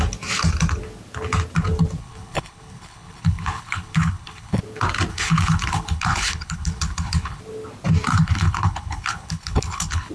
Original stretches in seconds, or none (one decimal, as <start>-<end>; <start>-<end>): 0.0-2.0; 4.6-5.1; 7.4-8.1